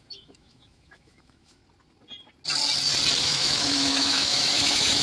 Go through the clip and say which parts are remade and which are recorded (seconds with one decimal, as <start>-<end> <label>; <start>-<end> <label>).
0.0-1.6 remade; 1.6-3.2 recorded; 3.2-5.0 remade